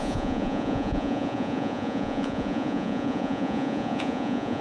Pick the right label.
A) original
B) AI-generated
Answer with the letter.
B